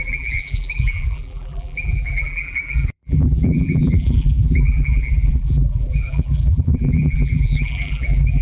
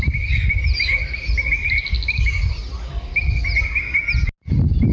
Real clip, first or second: second